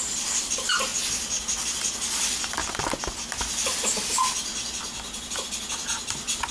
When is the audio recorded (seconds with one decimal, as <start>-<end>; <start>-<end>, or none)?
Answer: 0.0-6.5